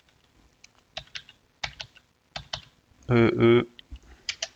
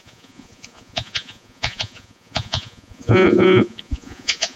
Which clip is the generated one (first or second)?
second